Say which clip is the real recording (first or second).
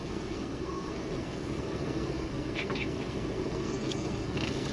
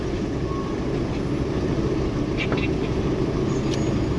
second